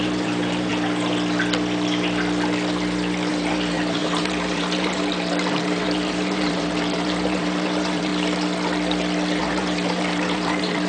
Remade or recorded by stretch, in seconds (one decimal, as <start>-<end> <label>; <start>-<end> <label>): 0.0-0.7 remade; 0.7-3.3 recorded; 3.3-8.1 remade; 8.1-9.4 recorded; 9.4-10.9 remade